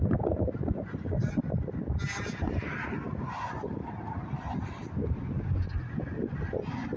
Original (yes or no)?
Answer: yes